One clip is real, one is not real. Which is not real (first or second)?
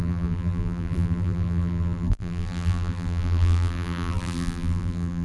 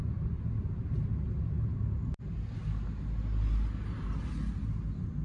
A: first